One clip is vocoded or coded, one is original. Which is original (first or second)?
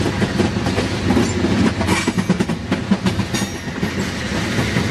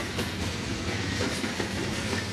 first